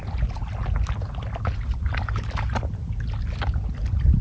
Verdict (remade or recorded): recorded